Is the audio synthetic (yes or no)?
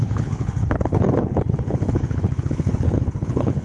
yes